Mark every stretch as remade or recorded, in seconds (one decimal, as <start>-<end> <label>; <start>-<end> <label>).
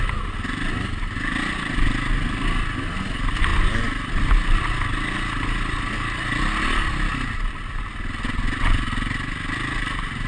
0.0-10.3 recorded